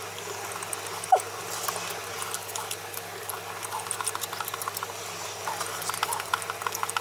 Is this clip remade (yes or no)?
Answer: no